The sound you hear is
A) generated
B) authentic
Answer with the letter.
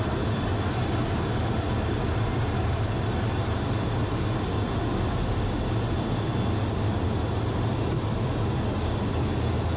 B